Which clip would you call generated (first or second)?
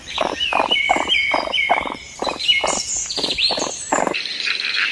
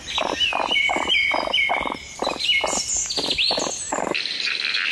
first